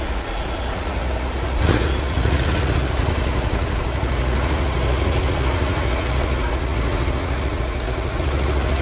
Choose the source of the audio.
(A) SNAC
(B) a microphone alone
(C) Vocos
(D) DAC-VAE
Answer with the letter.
C